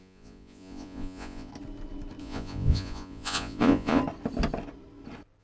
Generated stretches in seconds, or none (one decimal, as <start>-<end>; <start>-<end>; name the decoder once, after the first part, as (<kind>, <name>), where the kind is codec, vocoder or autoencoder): 0.0-1.5 (vocoder, Vocos); 2.2-4.0